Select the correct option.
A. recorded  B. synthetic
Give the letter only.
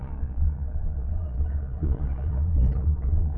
B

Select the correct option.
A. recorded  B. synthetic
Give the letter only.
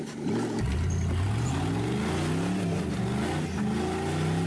A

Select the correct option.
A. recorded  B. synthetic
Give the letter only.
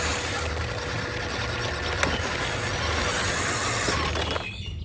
A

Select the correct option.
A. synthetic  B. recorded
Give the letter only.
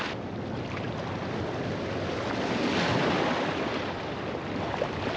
B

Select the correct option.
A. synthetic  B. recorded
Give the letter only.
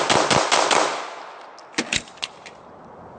B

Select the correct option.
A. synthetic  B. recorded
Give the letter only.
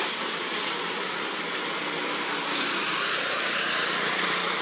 B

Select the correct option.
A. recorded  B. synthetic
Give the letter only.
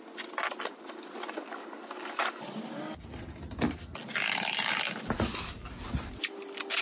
A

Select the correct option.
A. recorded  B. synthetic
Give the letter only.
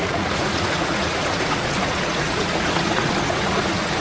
B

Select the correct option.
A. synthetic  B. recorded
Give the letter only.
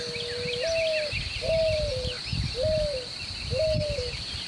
B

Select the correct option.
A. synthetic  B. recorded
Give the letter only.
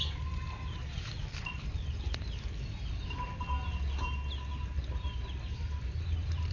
B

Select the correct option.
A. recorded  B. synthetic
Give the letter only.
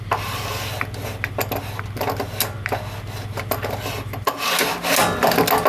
A